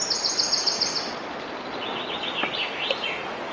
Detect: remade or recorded recorded